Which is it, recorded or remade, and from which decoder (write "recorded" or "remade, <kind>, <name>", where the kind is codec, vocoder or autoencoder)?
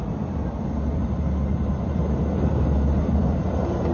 remade, vocoder, BigVGAN v2